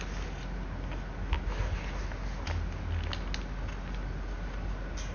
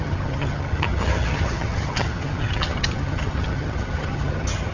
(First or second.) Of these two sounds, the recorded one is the first